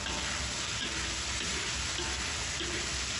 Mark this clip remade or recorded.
recorded